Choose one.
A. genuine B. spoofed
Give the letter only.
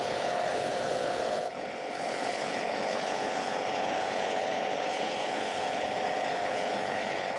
B